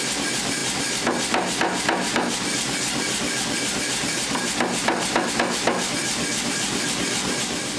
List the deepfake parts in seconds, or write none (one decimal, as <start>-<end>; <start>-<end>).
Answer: none